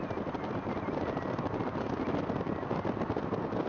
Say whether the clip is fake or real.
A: real